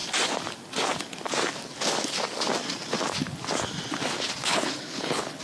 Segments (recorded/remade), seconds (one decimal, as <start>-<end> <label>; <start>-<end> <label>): 0.0-4.4 recorded; 4.4-5.4 remade